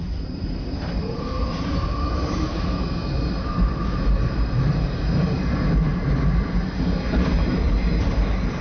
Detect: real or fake fake